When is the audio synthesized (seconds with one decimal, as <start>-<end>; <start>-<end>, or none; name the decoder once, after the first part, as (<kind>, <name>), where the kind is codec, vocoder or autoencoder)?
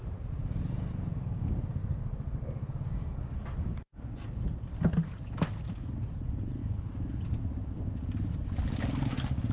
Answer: none